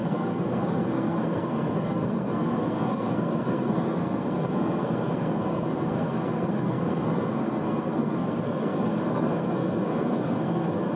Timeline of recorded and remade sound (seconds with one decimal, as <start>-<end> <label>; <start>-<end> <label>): 0.0-11.0 remade